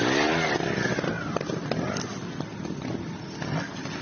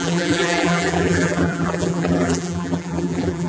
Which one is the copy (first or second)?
second